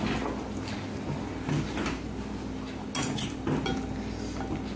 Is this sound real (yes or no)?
yes